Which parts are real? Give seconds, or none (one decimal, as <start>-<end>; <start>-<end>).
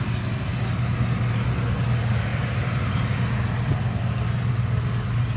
0.0-5.4